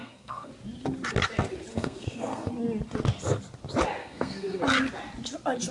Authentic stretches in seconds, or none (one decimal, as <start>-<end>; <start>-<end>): 0.5-1.7; 2.5-4.0; 4.6-5.7